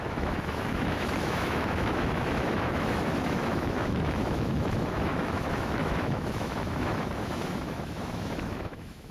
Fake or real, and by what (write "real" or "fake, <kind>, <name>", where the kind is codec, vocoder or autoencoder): fake, autoencoder, DAC-VAE